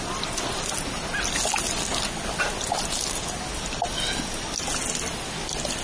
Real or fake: real